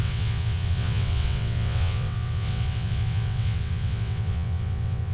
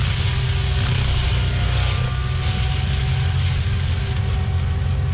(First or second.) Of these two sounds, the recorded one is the second